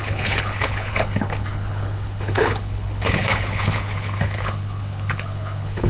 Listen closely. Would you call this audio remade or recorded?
remade